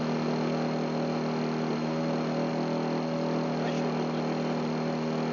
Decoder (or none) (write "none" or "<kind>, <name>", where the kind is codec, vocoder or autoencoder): none